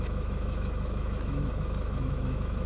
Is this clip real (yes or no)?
no